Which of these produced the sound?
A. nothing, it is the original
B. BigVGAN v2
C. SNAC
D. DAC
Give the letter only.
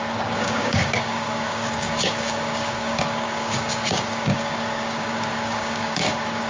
D